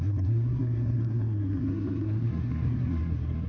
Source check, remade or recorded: remade